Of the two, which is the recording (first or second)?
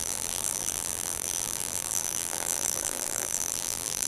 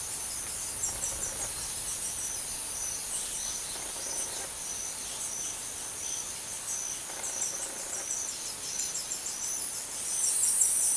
second